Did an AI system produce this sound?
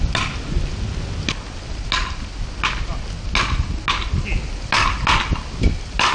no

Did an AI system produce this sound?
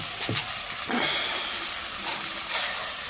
no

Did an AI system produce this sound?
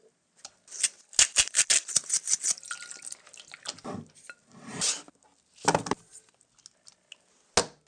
no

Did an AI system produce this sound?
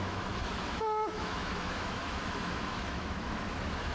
yes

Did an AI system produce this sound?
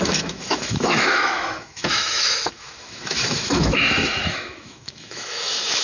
yes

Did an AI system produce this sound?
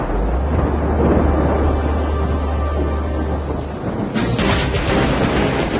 no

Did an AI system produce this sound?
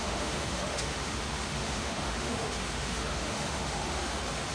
yes